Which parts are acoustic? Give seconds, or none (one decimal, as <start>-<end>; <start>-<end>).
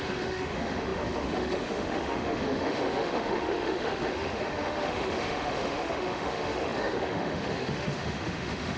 none